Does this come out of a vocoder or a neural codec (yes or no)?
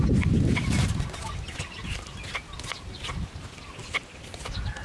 no